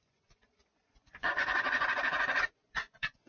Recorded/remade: remade